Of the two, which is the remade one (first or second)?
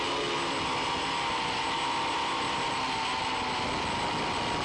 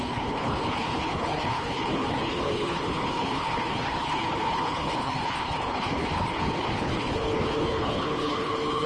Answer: second